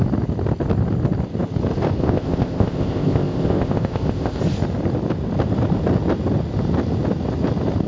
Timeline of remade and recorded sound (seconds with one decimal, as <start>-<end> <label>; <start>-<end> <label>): 0.0-2.0 recorded; 2.0-4.4 remade; 4.4-7.9 recorded